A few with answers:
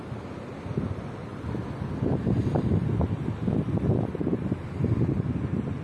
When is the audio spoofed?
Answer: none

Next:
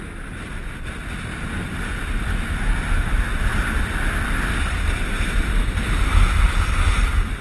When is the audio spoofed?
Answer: none

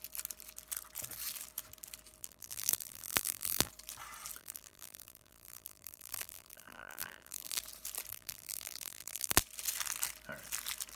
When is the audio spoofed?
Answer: 2.2-3.7 (vocoder, BigVGAN v2); 4.4-7.6; 8.1-9.4

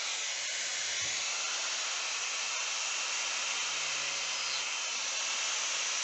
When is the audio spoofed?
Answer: none

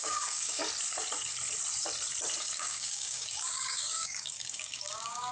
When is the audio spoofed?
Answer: 0.0-0.6 (codec, DAC); 2.4-5.3

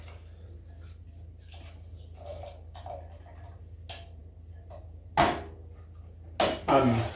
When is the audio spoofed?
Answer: none

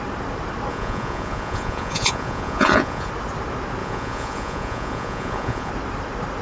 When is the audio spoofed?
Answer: 0.7-3.1 (vocoder, Vocos); 3.8-5.7